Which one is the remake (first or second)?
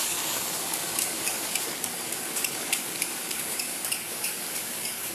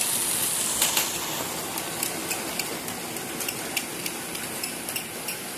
first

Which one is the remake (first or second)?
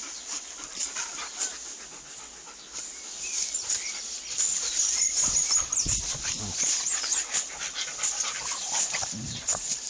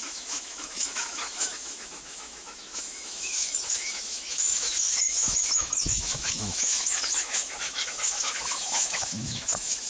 second